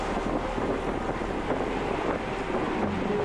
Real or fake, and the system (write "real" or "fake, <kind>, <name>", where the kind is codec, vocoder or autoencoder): real